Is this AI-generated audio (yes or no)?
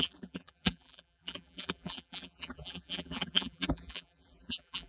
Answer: yes